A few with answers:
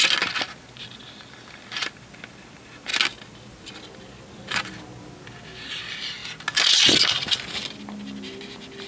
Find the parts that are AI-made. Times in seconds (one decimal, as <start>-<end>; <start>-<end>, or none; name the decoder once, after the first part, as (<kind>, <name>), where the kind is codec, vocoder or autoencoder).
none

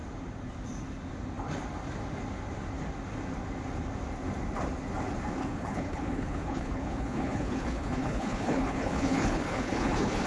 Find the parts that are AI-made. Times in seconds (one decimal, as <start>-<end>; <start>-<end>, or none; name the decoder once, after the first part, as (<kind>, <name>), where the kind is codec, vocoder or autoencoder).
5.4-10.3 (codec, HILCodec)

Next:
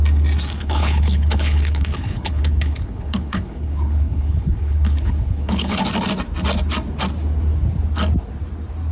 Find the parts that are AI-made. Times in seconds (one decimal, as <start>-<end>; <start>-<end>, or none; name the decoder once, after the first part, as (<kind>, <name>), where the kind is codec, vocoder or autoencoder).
0.6-5.8 (codec, HILCodec)